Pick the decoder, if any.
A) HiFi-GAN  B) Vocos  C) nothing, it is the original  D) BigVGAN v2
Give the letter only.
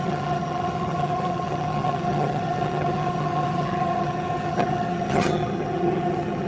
A